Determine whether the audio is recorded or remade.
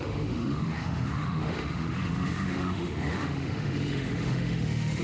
remade